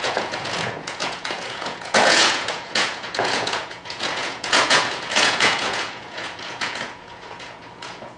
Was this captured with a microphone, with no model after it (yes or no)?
no